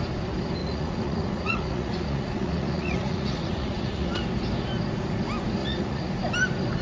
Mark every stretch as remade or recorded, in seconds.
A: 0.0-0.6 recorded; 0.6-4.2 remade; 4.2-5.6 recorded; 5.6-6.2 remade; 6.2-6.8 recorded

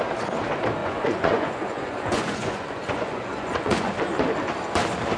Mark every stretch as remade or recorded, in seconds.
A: 0.0-0.8 recorded; 0.8-3.9 remade; 3.9-5.2 recorded

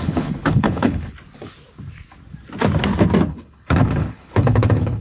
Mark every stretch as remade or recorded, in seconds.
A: 0.0-1.1 remade; 1.1-3.3 recorded; 3.3-5.0 remade